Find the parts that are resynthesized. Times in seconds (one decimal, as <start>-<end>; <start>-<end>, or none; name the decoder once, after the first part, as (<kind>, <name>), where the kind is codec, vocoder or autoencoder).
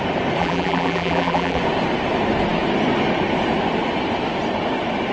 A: 0.4-1.6 (vocoder, BigVGAN v2)